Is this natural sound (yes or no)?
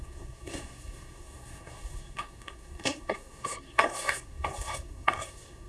no